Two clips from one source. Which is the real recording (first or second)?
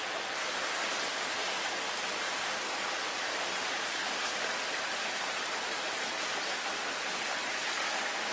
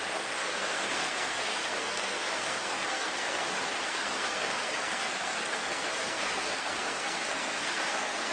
first